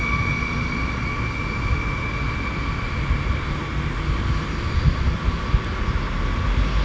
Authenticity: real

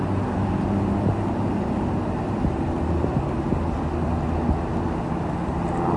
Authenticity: real